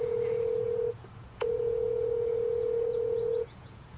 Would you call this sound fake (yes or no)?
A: yes